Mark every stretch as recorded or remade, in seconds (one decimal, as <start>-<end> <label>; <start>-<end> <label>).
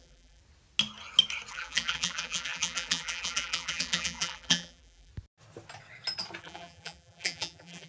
0.0-0.4 remade; 0.4-1.5 recorded; 1.5-5.1 remade; 5.1-6.4 recorded; 6.4-7.9 remade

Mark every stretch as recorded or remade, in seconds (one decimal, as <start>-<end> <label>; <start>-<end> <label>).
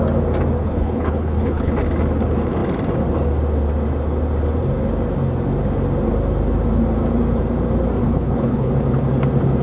0.0-0.6 recorded; 0.6-1.7 remade; 1.7-8.0 recorded; 8.0-8.7 remade; 8.7-9.6 recorded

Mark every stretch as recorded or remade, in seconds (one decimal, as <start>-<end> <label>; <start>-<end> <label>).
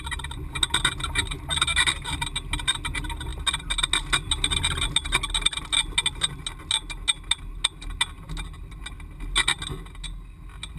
0.0-10.8 recorded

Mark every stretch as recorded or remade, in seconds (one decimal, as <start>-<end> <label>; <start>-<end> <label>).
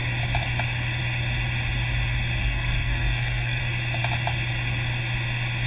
0.0-2.4 recorded; 2.4-3.6 remade; 3.6-5.7 recorded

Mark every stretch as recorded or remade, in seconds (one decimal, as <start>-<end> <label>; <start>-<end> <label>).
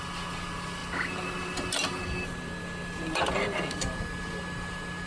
0.0-5.1 recorded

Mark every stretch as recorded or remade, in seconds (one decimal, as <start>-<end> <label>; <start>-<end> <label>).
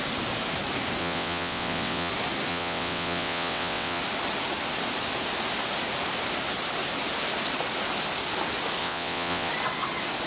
0.0-1.0 recorded; 1.0-2.1 remade; 2.1-2.5 recorded; 2.5-4.0 remade; 4.0-8.8 recorded; 8.8-9.5 remade; 9.5-10.3 recorded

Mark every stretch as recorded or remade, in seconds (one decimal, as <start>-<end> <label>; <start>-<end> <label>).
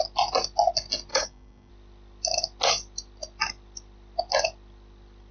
0.0-1.1 recorded; 1.1-1.7 remade; 1.7-5.3 recorded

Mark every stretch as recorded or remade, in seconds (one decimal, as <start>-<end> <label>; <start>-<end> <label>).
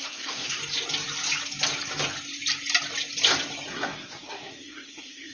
0.0-0.6 remade; 0.6-3.7 recorded; 3.7-5.3 remade